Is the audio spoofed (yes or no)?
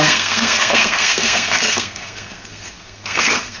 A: yes